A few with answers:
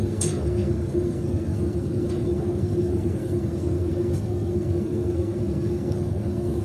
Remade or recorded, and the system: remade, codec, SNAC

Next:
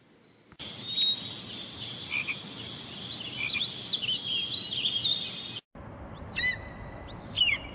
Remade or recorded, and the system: recorded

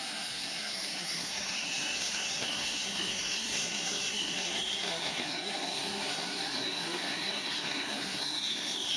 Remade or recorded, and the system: remade, codec, SNAC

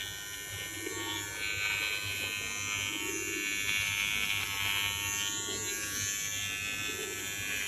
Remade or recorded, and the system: recorded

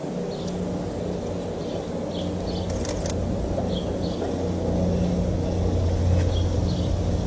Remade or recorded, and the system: recorded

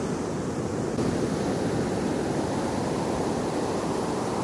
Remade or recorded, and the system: recorded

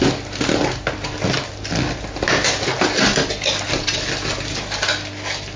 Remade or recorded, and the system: recorded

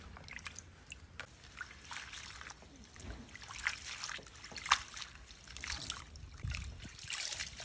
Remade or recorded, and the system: recorded